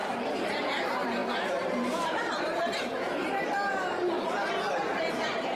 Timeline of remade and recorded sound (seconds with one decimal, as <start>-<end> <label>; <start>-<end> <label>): 0.0-5.6 remade